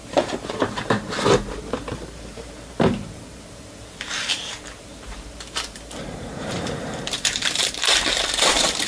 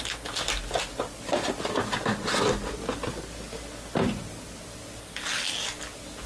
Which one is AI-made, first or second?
first